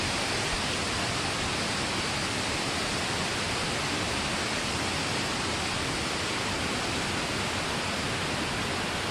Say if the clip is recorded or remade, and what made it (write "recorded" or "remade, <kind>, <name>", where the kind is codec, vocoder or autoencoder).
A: recorded